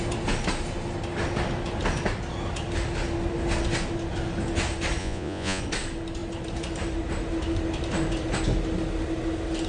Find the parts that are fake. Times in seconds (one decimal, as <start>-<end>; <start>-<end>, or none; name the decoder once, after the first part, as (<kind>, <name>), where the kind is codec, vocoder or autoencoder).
5.0-5.6 (vocoder, Vocos)